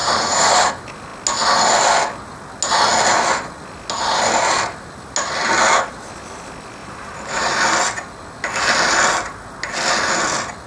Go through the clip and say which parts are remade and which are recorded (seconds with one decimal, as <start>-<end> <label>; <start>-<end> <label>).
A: 0.0-0.7 remade; 0.7-6.8 recorded; 6.8-7.6 remade; 7.6-10.7 recorded